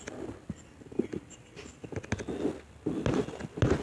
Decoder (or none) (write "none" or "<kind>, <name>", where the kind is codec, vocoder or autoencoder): none